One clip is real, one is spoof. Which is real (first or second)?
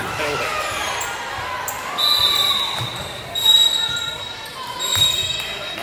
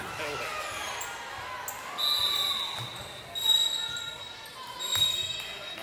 second